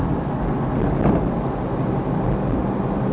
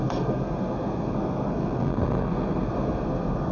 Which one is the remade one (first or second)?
second